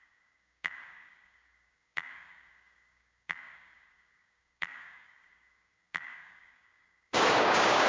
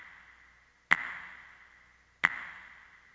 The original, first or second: second